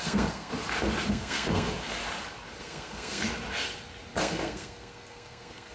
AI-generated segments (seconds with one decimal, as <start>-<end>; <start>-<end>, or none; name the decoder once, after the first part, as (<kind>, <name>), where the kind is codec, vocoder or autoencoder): 0.0-0.5 (codec, SNAC); 1.1-2.0; 2.6-3.2; 4.2-5.7